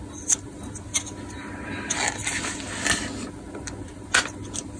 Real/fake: real